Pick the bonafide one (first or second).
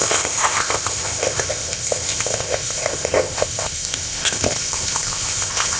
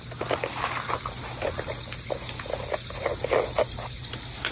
second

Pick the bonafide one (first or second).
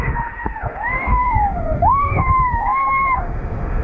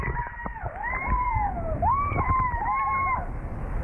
second